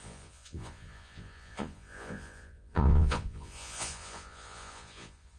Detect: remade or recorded remade